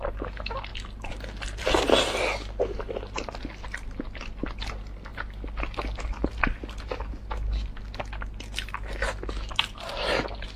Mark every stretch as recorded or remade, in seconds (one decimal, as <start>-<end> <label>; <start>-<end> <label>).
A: 0.0-10.6 recorded

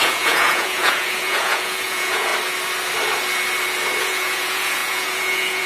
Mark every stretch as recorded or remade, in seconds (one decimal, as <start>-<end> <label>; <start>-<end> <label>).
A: 0.0-2.3 remade; 2.3-4.0 recorded; 4.0-5.7 remade

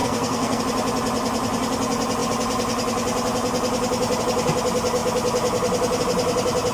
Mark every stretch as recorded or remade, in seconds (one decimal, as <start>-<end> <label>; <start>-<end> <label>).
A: 0.0-0.6 remade; 0.6-6.7 recorded

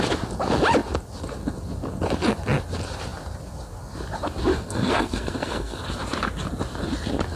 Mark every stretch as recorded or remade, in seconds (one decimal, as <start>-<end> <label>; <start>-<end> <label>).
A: 0.0-4.5 recorded; 4.5-5.8 remade; 5.8-7.4 recorded

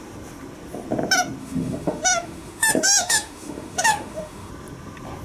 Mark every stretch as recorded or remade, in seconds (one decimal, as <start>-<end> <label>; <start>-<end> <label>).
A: 0.0-1.4 recorded; 1.4-4.5 remade; 4.5-5.2 recorded

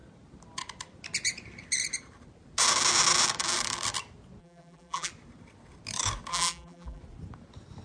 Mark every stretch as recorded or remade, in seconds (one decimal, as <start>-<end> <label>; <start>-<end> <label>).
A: 0.0-4.4 recorded; 4.4-5.1 remade; 5.1-6.3 recorded; 6.3-7.0 remade; 7.0-7.8 recorded

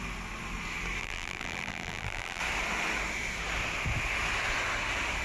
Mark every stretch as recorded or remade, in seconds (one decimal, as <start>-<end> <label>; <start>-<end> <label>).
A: 0.0-1.0 recorded; 1.0-2.4 remade; 2.4-5.2 recorded